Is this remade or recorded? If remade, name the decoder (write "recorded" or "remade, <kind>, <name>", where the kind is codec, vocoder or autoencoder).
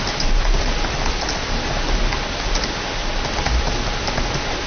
recorded